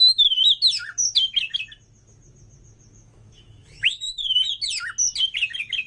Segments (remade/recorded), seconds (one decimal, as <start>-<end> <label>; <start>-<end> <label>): 0.0-2.9 recorded; 2.9-4.4 remade; 4.4-5.9 recorded